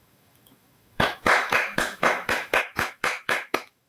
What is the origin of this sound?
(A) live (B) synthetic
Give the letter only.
B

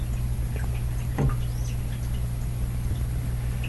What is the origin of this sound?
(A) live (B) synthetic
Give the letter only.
A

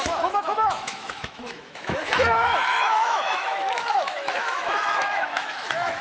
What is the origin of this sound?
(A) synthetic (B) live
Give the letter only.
A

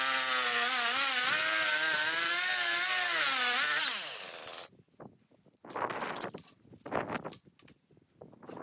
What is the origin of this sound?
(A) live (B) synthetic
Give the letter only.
A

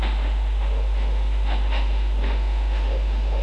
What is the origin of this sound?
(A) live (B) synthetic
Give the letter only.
B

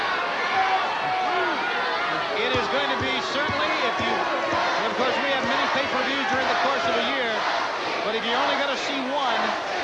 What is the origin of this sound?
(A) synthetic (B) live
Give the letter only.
B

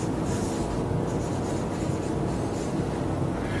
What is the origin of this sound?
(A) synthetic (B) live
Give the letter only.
B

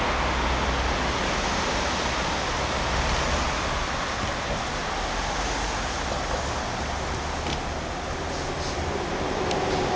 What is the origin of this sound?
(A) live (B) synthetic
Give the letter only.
A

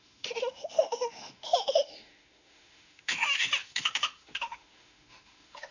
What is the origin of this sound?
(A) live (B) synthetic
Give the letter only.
B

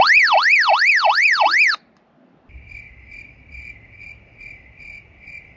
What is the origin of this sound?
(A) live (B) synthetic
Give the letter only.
A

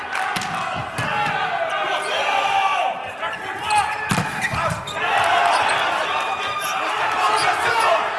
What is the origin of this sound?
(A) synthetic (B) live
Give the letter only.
B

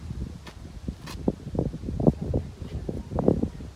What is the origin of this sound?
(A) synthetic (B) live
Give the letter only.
B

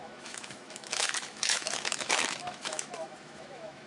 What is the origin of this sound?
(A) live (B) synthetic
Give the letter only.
B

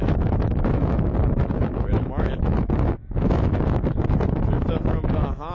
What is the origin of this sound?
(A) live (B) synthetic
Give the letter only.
B